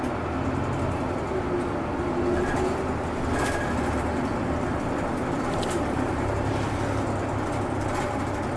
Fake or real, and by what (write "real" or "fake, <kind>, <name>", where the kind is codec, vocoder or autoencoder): real